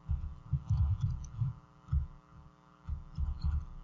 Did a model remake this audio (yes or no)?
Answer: no